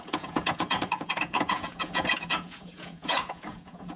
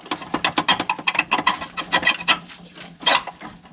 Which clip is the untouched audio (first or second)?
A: second